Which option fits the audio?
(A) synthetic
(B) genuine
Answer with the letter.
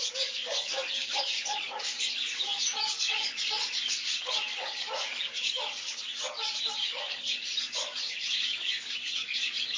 A